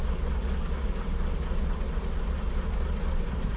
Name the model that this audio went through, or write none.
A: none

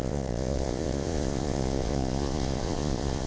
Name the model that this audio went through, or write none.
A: vocoder, Vocos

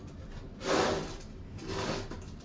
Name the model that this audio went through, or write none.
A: none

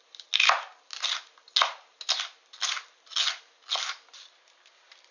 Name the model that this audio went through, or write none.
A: none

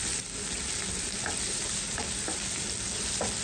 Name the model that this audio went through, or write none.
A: none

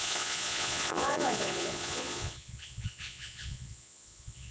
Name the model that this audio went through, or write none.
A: vocoder, Vocos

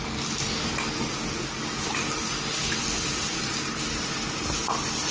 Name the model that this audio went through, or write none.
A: none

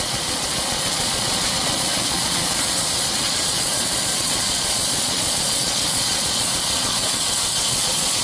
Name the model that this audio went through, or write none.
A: vocoder, Vocos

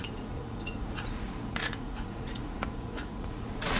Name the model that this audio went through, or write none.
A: vocoder, Vocos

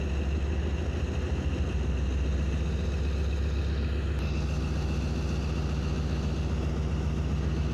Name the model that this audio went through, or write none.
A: none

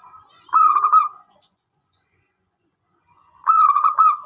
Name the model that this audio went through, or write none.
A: vocoder, Vocos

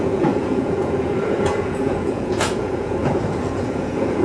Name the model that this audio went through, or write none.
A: vocoder, Vocos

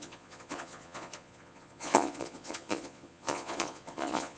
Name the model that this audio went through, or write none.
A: vocoder, Vocos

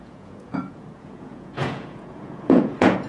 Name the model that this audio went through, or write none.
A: vocoder, Vocos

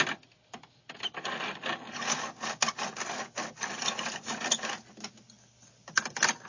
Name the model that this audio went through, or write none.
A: none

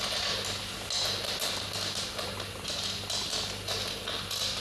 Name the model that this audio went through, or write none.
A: none